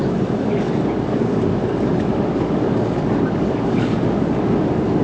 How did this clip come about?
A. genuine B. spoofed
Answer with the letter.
B